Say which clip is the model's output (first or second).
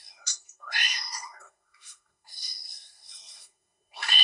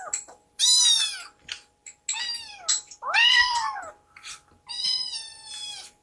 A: first